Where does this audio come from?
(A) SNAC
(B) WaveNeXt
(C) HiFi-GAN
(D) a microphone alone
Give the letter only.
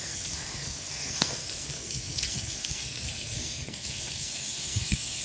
A